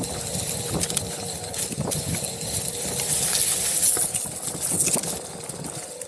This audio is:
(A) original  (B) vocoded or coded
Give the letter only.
A